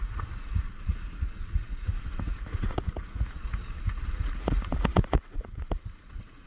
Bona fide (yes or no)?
no